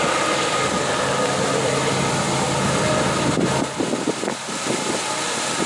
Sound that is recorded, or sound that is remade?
recorded